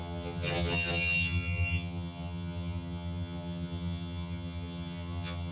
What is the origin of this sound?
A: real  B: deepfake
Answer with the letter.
B